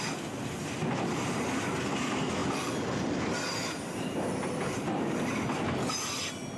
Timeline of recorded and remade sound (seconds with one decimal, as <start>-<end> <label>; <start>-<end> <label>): 0.0-6.6 recorded